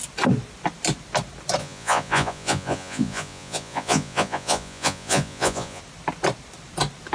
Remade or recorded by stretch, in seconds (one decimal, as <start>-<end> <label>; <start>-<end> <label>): 0.0-1.6 recorded; 1.6-5.8 remade; 5.8-7.1 recorded